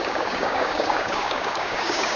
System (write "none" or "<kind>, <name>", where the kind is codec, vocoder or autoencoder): codec, DAC